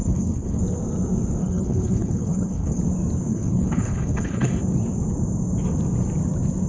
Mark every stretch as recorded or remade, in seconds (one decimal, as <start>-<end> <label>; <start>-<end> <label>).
0.0-0.6 remade; 0.6-1.4 recorded; 1.4-2.8 remade; 2.8-3.3 recorded; 3.3-4.5 remade; 4.5-6.7 recorded